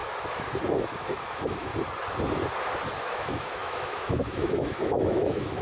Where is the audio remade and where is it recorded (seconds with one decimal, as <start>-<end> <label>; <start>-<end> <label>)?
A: 0.0-0.7 recorded; 0.7-1.7 remade; 1.7-3.0 recorded; 3.0-5.6 remade